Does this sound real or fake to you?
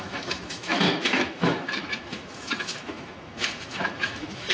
fake